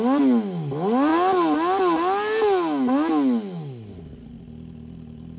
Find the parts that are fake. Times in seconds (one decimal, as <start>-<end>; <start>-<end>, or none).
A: none